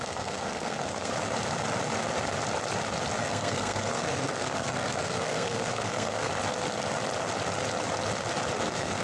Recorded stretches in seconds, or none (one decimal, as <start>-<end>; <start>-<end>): 1.1-3.2; 6.3-8.6